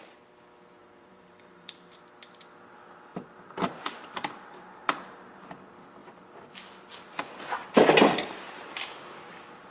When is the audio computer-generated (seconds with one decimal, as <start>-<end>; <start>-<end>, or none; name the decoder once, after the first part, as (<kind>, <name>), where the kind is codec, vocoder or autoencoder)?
0.8-2.0 (vocoder, BigVGAN v2); 3.1-5.5